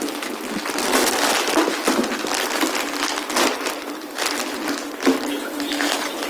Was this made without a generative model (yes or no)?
yes